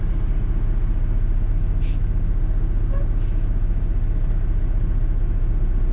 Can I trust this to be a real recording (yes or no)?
yes